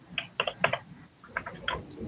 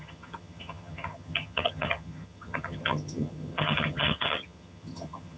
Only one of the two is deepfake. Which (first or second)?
second